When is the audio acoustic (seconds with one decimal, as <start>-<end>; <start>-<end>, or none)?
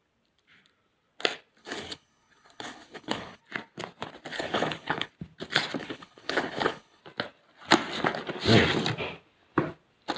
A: 0.0-1.6; 3.4-4.3; 5.1-5.8; 7.0-10.2